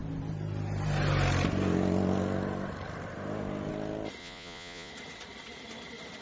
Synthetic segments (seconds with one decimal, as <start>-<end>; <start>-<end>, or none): 4.2-4.9